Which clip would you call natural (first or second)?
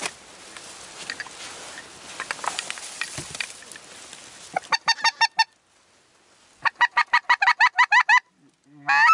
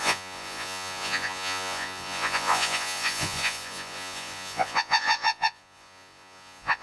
first